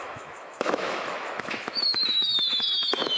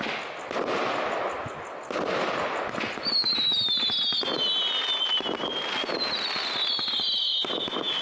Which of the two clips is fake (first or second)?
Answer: first